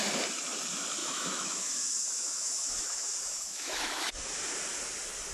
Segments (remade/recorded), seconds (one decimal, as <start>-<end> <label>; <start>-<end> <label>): 0.0-1.0 recorded; 1.0-4.1 remade; 4.1-5.3 recorded